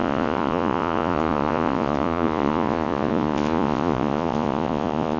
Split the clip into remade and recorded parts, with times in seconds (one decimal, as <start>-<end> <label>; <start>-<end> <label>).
0.0-5.2 remade